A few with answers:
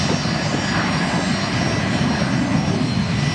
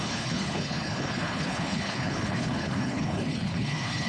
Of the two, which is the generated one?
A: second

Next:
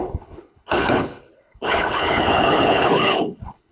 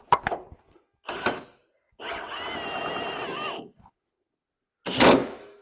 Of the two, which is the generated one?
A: first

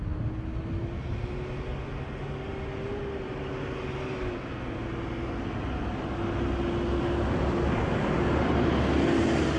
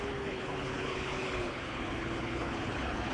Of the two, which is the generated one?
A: second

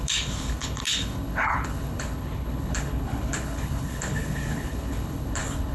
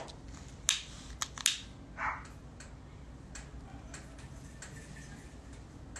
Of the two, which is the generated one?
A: first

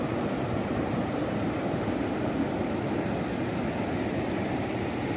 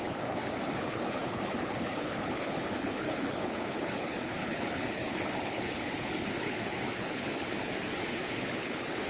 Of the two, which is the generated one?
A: second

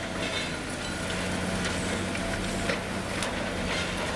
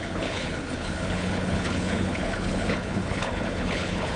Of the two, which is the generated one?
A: second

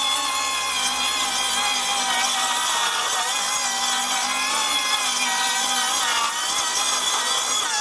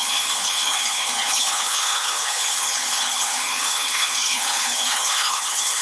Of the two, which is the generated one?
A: second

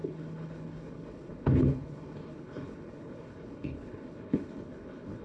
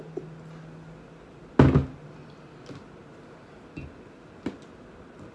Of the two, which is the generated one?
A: first